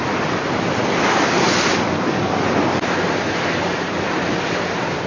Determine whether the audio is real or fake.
fake